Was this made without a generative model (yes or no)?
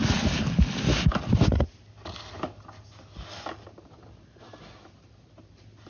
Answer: yes